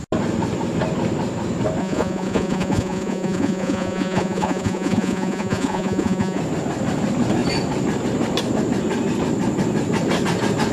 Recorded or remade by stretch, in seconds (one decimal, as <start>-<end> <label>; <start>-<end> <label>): 0.0-1.8 recorded; 1.8-6.4 remade; 6.4-10.7 recorded